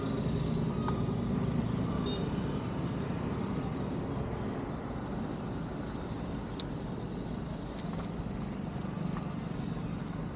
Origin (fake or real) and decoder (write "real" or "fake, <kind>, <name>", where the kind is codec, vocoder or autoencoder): real